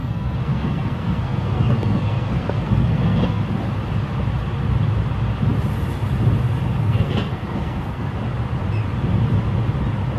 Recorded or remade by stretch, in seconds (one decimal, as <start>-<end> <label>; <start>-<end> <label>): 0.0-3.4 remade; 3.4-6.8 recorded; 6.8-8.1 remade; 8.1-10.2 recorded